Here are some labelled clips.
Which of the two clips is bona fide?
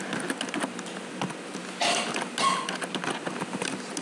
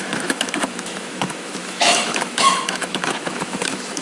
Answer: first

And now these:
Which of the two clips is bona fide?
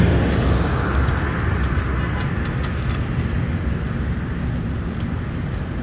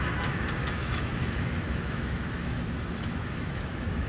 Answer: first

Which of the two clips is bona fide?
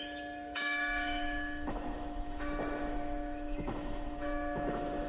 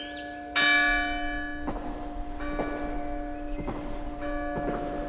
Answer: second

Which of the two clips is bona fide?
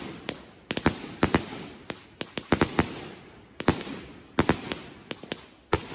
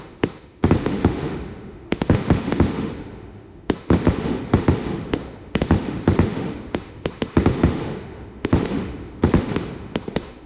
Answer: first